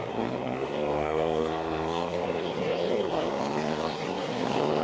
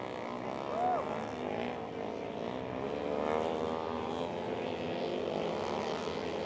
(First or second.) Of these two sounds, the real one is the second